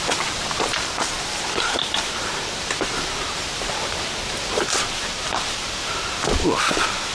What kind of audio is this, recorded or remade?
remade